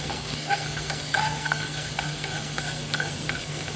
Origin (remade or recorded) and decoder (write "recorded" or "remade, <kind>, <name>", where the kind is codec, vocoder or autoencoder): remade, codec, SNAC